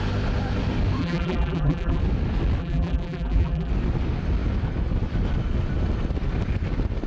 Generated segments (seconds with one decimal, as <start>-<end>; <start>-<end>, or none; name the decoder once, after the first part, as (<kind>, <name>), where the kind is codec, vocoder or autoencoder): 1.0-2.0 (vocoder, BigVGAN v2); 2.6-3.7